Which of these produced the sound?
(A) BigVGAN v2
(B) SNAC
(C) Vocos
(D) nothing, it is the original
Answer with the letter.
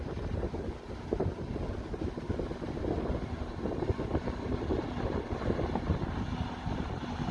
D